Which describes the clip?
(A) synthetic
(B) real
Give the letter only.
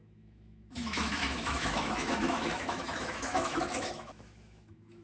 A